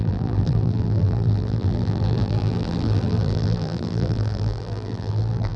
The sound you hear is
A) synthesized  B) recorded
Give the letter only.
A